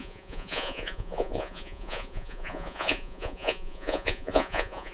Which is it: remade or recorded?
remade